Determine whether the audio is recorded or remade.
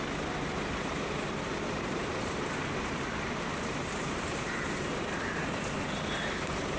remade